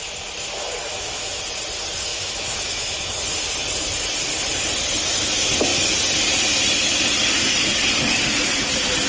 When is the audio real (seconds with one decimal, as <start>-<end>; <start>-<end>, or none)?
0.0-0.8; 1.4-2.1; 3.2-9.1